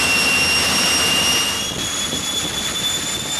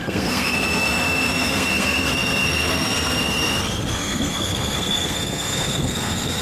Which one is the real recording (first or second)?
first